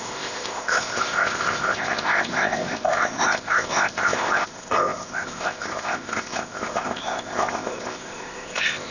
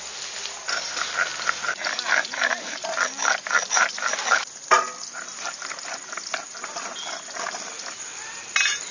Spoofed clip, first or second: first